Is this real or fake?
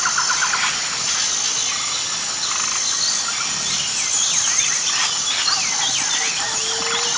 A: real